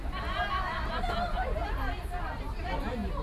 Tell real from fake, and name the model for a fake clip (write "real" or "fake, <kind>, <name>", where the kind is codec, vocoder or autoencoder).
real